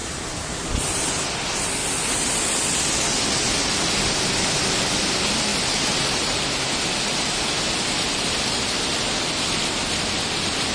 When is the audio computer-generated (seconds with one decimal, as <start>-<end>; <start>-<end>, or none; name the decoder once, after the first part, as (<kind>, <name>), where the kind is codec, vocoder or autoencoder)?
0.0-1.1 (vocoder, BigVGAN v2); 5.5-6.4